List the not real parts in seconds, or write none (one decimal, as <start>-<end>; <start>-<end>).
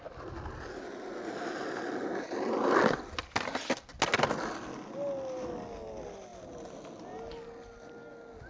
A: none